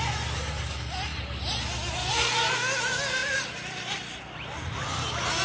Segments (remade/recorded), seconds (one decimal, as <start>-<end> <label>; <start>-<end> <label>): 0.0-5.4 recorded